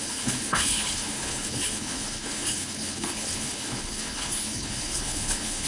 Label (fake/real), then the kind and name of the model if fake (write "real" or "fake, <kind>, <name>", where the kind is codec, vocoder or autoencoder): fake, codec, HILCodec